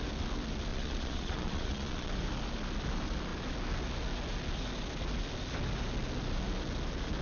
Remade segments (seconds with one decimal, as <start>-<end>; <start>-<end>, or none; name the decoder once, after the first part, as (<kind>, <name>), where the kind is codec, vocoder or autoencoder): 0.7-2.1 (vocoder, Vocos)